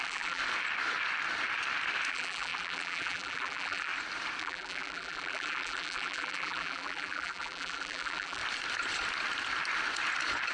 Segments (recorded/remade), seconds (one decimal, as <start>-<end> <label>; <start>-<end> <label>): 0.0-0.4 remade; 0.4-2.1 recorded; 2.1-3.9 remade; 3.9-4.4 recorded; 4.4-8.4 remade; 8.4-10.5 recorded